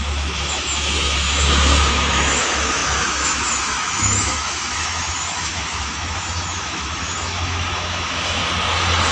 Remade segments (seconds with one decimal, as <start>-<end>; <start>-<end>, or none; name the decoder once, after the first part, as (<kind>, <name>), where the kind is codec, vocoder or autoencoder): 0.0-8.4 (autoencoder, DAC-VAE)